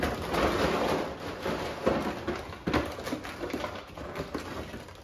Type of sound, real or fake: real